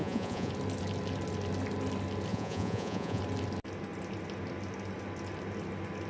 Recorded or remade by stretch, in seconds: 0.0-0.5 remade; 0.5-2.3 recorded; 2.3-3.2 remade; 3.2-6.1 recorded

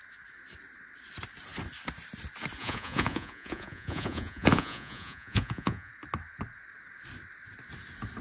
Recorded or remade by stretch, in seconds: 0.0-2.6 recorded; 2.6-5.9 remade; 5.9-8.2 recorded